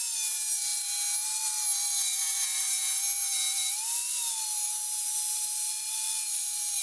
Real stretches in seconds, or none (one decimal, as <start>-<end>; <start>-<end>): 0.0-6.8